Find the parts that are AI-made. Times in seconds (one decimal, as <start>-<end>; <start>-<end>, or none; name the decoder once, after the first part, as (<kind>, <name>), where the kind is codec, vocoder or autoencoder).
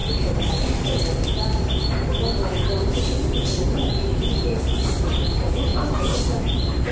none